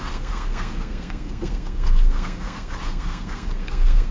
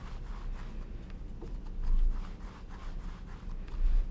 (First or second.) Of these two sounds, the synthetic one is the first